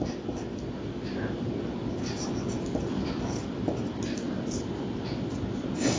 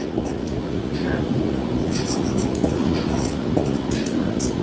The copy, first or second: second